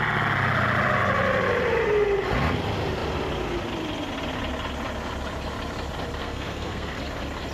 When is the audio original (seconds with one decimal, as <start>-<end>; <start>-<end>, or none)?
0.0-6.2; 7.0-7.5